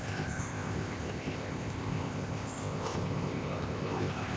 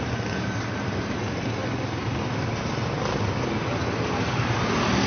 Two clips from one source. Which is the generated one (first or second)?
first